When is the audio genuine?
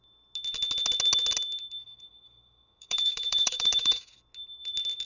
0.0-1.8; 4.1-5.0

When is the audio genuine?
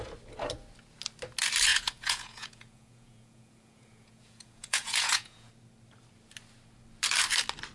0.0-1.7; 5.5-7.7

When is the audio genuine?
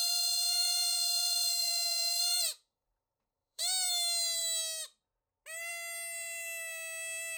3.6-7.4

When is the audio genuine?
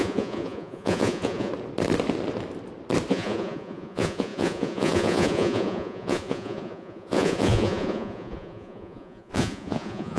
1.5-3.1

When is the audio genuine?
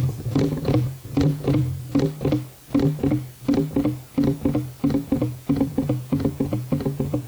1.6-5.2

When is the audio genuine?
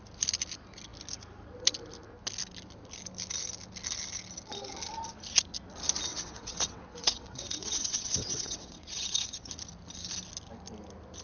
0.0-6.1; 9.5-11.2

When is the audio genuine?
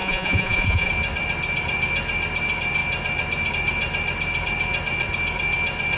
0.9-6.0